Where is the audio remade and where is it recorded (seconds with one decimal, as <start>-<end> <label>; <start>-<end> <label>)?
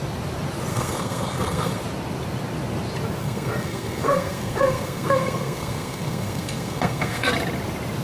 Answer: 0.0-0.7 recorded; 0.7-1.8 remade; 1.8-3.2 recorded; 3.2-7.3 remade; 7.3-8.0 recorded